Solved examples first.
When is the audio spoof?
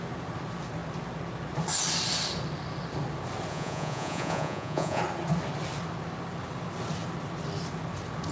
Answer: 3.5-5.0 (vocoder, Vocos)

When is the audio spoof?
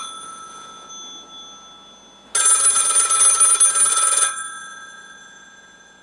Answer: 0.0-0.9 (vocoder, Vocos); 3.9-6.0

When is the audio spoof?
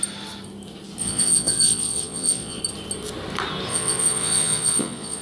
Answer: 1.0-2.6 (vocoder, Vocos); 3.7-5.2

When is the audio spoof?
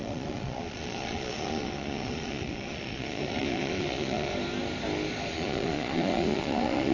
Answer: 0.0-4.3 (vocoder, Vocos); 5.3-6.9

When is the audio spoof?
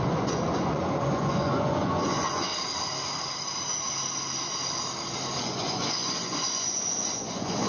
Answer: 0.0-2.5 (vocoder, Vocos); 5.4-7.7